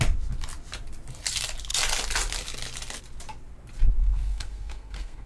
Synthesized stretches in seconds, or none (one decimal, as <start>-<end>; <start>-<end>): 4.0-5.3